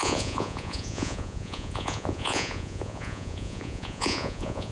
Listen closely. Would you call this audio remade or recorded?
remade